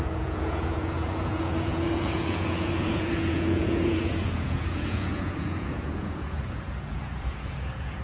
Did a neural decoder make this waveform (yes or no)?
yes